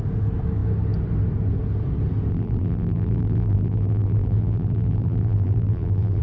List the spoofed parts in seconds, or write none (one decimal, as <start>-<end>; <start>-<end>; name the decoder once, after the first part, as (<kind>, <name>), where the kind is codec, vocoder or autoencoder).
2.3-6.2 (vocoder, BigVGAN v2)